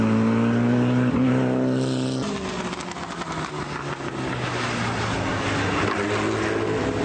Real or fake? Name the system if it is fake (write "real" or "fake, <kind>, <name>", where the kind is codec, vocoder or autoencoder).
real